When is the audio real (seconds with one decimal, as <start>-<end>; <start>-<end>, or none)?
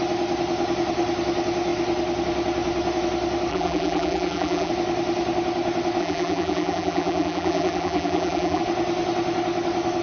0.0-3.5; 4.7-6.0; 8.6-10.0